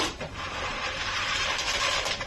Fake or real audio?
fake